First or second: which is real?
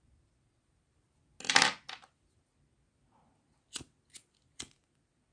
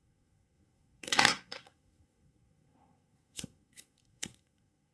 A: first